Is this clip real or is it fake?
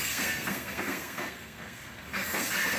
fake